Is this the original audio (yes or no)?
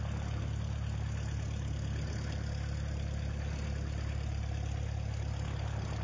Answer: yes